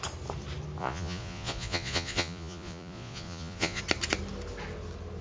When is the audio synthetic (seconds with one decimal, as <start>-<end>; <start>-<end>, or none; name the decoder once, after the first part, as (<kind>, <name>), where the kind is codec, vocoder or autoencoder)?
0.8-3.8 (vocoder, Vocos)